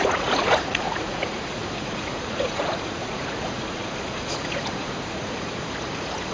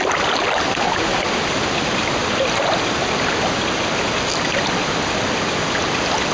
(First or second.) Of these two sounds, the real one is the second